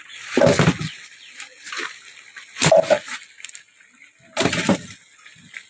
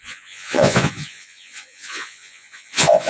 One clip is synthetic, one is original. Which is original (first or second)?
first